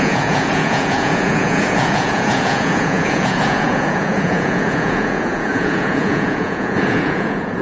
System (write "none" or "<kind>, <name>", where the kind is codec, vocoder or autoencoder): vocoder, Vocos